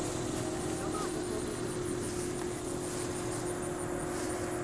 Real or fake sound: real